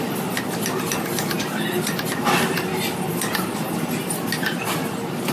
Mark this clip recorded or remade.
recorded